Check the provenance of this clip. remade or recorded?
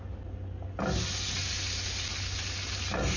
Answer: recorded